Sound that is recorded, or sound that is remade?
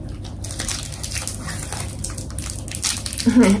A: recorded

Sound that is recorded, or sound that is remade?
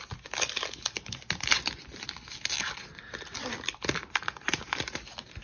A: recorded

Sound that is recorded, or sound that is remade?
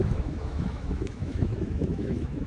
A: remade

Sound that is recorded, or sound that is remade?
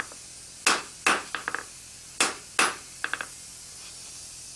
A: recorded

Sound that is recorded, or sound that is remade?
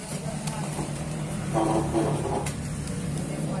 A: recorded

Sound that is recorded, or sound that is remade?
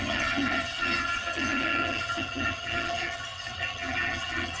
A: remade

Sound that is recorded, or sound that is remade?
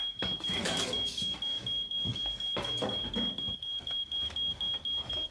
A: remade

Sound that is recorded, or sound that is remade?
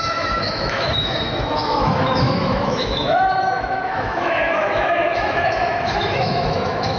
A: remade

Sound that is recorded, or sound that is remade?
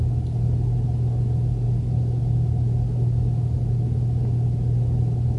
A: recorded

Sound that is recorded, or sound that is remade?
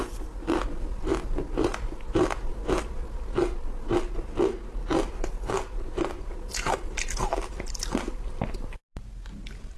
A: recorded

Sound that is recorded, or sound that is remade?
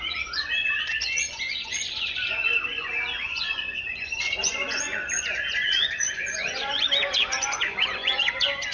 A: remade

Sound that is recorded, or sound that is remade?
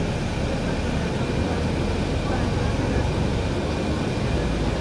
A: recorded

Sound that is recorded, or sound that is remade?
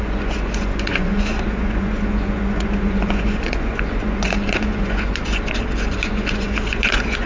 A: remade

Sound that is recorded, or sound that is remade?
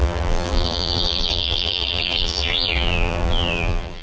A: remade